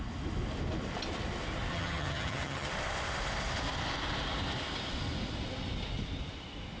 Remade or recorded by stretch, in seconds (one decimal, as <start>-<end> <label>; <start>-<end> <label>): 0.0-1.7 recorded; 1.7-2.7 remade; 2.7-6.8 recorded